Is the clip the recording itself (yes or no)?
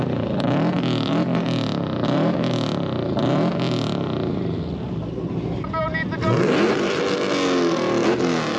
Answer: yes